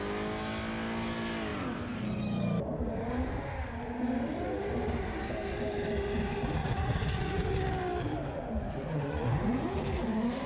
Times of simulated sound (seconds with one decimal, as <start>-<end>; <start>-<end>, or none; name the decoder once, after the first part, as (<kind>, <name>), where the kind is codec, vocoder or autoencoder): 6.6-7.5 (vocoder, Vocos); 8.3-9.8